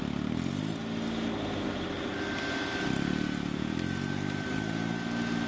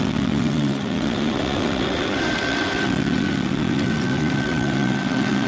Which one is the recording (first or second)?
first